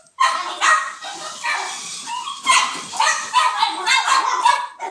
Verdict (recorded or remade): recorded